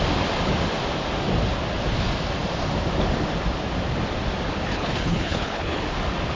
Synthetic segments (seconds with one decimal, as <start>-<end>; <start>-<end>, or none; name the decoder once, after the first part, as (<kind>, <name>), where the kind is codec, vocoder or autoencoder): 4.7-5.8 (codec, HILCodec)